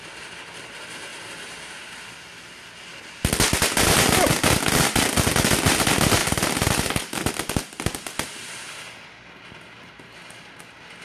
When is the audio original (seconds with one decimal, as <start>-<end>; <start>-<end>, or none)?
0.0-1.1; 1.8-6.2; 7.3-11.0